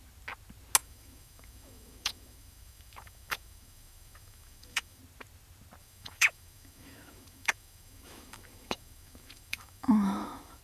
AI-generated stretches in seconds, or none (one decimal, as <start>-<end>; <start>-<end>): 0.8-5.0; 5.8-10.6